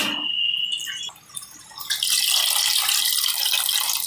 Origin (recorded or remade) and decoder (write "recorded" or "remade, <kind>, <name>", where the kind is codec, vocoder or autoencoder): recorded